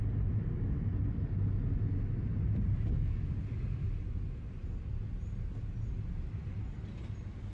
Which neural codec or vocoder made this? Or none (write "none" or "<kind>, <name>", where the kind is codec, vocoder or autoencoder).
none